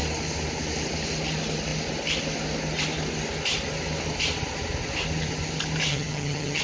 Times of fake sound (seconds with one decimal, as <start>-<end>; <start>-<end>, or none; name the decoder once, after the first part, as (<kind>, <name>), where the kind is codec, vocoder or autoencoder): 5.9-6.6 (vocoder, HiFi-GAN)